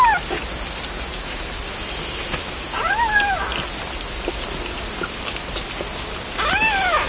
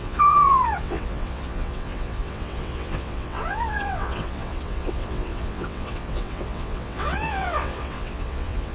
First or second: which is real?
first